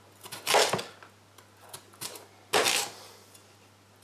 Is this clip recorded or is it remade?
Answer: recorded